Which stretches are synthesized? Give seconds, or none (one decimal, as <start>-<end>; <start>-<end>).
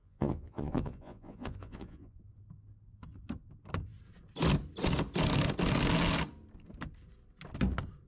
0.0-2.2